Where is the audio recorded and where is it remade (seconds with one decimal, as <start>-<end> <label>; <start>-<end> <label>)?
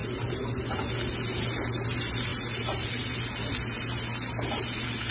0.0-0.8 remade; 0.8-5.1 recorded